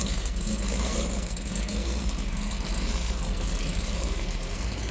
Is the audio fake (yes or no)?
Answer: yes